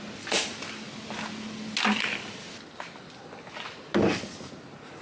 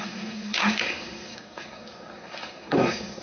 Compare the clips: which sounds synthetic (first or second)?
second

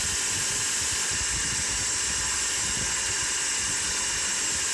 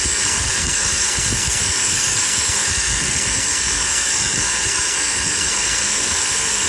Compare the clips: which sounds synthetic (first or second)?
second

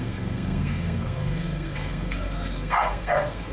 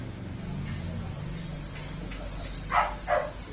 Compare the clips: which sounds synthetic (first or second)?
first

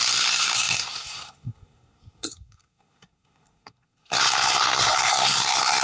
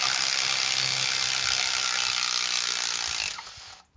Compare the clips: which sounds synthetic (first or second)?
first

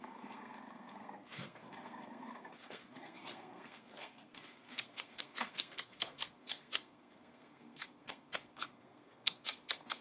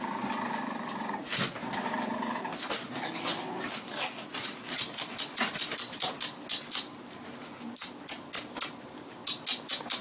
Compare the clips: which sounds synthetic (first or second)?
first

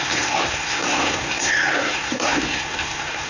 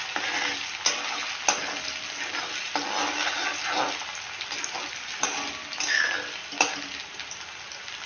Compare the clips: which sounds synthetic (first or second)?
first